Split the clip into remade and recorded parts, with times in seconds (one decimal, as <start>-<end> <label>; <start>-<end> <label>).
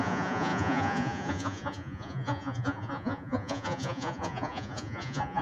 0.0-5.4 remade